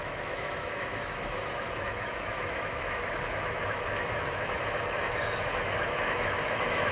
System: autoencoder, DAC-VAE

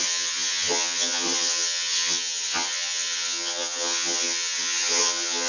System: vocoder, HiFi-GAN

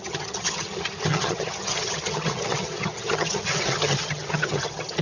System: vocoder, HiFi-GAN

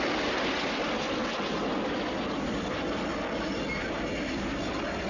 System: none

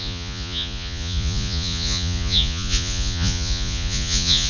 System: vocoder, Vocos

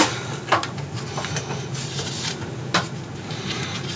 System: none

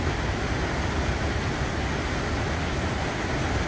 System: none